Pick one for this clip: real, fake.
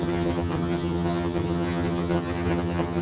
fake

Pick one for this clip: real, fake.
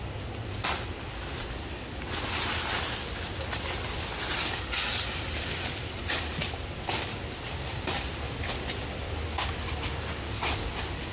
real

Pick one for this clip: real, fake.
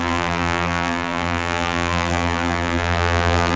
fake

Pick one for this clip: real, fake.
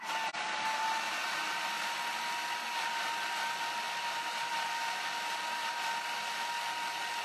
real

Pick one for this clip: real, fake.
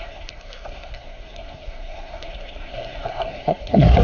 fake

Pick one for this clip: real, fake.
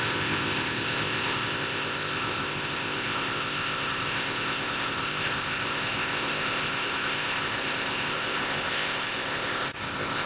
fake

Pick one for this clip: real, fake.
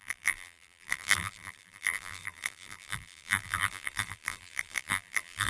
fake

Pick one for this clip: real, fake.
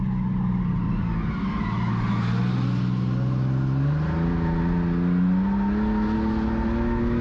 real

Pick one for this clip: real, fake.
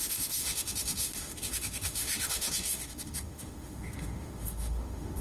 fake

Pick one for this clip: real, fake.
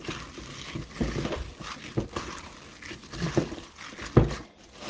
real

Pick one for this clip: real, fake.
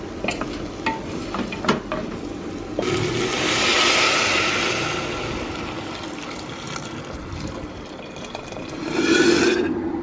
real